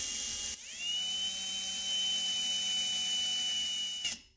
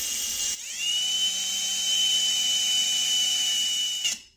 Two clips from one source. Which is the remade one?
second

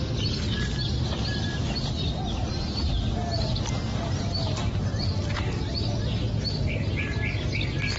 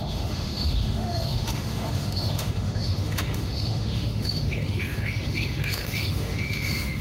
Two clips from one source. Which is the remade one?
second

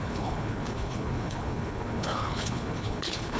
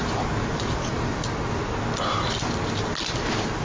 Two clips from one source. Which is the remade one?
first